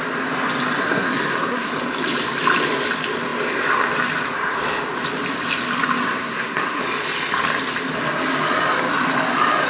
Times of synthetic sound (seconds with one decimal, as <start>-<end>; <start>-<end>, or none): 0.8-1.7; 6.0-6.8